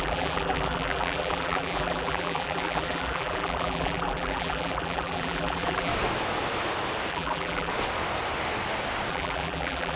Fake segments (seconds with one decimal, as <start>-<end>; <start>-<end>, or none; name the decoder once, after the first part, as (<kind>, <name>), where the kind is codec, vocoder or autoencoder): 0.0-5.9 (vocoder, BigVGAN v2); 7.1-7.7; 9.1-10.0